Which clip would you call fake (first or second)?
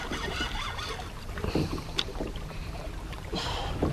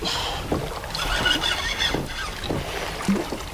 first